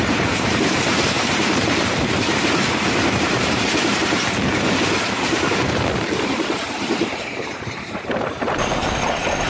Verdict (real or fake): fake